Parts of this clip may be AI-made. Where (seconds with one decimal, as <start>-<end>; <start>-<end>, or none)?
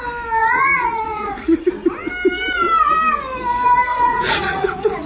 0.4-1.6; 3.9-5.1